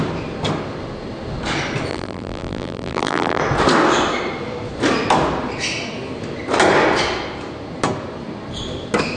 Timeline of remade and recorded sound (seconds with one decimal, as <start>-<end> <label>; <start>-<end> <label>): 0.0-1.9 recorded; 1.9-3.4 remade; 3.4-9.2 recorded